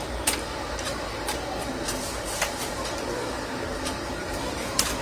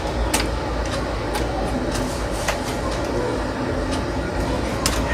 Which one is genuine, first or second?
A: second